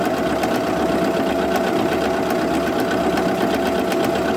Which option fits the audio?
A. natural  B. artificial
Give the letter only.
A